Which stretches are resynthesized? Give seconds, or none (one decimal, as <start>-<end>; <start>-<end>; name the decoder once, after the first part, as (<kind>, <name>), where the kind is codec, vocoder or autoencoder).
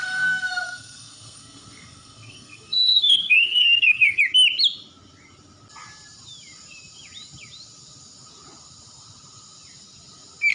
0.0-4.2 (codec, SNAC)